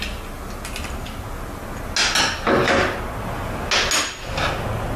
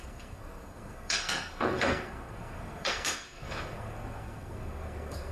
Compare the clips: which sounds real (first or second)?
first